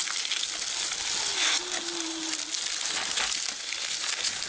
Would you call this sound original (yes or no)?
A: yes